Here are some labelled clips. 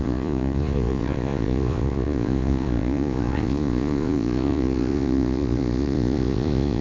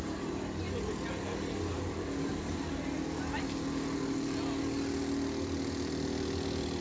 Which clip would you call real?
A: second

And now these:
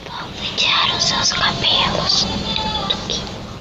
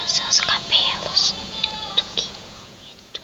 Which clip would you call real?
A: first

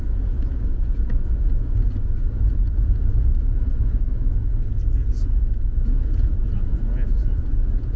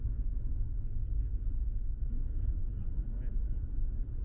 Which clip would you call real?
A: second